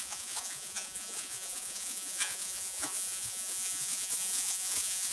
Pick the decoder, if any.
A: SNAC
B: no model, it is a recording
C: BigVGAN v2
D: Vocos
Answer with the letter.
D